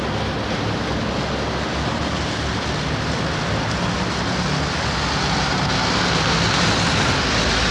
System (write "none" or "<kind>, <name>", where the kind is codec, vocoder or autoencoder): none